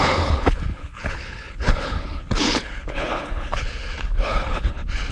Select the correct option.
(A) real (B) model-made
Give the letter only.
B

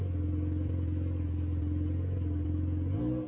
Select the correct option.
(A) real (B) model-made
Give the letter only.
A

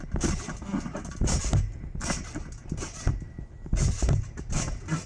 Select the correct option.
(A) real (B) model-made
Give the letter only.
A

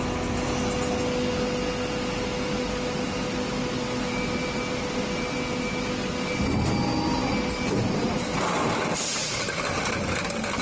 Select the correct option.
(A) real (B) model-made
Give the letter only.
A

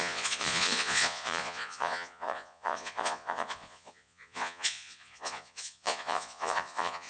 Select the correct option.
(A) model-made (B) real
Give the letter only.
A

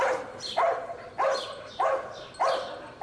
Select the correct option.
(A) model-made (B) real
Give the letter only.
B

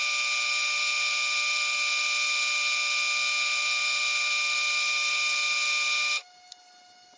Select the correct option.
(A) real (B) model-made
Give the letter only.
A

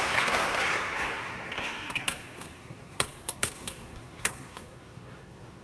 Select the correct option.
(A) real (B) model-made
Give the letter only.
B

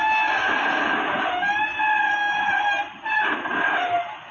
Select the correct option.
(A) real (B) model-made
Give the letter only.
A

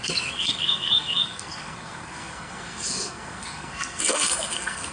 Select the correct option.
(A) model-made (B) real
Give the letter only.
A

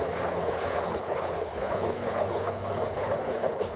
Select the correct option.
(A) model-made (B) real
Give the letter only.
A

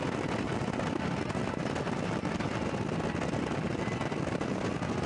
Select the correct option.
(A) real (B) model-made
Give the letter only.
A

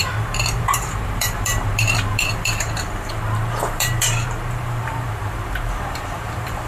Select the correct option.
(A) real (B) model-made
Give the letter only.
B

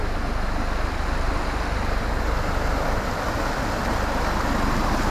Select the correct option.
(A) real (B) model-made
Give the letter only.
A